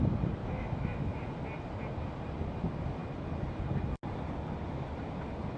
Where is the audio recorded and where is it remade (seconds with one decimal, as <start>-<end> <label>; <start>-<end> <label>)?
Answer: 0.0-0.4 recorded; 0.4-1.2 remade; 1.2-5.6 recorded